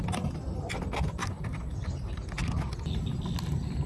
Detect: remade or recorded recorded